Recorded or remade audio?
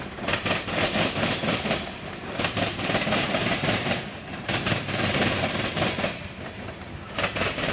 remade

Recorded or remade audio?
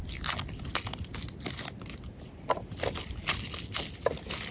recorded